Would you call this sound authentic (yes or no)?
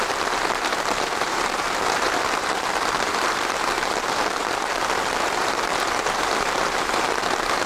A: no